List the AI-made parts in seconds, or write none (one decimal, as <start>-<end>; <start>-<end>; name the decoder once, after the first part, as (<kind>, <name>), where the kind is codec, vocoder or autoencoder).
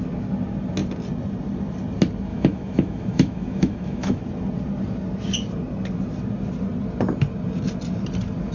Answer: 2.3-4.2 (autoencoder, DAC-VAE)